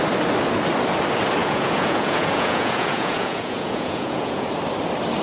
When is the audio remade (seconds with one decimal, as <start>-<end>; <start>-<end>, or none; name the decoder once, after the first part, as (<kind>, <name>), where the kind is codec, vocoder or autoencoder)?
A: 1.4-4.5 (vocoder, Vocos)